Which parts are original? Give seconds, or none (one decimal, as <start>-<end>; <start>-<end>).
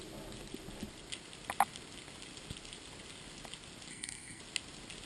0.0-3.9; 4.4-5.1